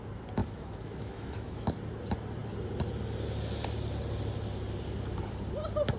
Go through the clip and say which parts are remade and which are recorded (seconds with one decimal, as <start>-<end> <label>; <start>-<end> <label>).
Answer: 0.0-0.4 recorded; 0.4-1.7 remade; 1.7-6.0 recorded